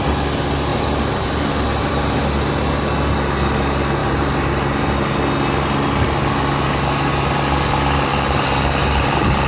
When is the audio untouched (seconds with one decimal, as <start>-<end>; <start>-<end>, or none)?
0.0-0.7; 2.2-4.0; 4.9-8.1